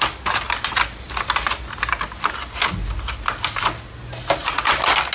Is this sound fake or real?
real